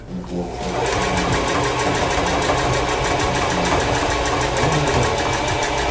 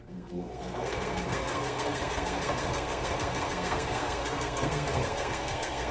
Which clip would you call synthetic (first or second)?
second